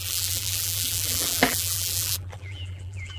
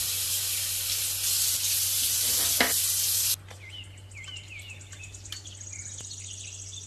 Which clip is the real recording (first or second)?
second